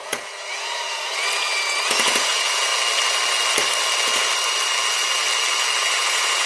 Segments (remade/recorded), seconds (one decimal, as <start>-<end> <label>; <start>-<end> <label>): 0.0-2.7 remade; 2.7-5.8 recorded; 5.8-6.5 remade

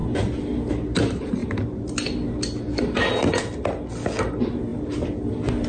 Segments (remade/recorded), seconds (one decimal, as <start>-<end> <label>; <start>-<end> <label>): 0.0-5.7 recorded